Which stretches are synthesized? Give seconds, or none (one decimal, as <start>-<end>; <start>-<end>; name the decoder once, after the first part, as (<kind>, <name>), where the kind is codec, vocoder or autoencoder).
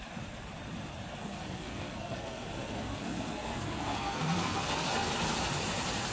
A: 1.2-4.9 (codec, SNAC)